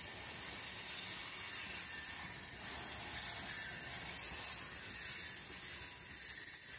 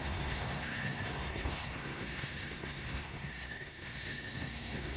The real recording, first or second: first